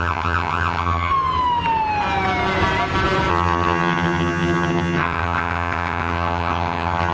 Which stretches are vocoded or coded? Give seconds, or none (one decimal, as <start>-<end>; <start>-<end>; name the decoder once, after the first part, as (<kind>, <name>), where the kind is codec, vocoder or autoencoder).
0.0-1.1 (vocoder, HiFi-GAN); 3.3-7.1